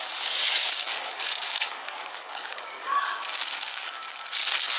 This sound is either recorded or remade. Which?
remade